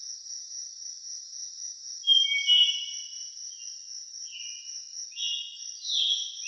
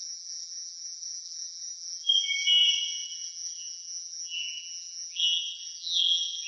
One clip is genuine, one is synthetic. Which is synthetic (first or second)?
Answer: second